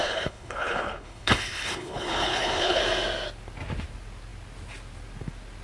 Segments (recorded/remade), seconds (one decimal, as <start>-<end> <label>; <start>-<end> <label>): 0.0-2.8 remade; 2.8-5.6 recorded